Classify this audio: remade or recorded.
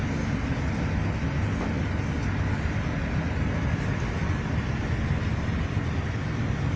recorded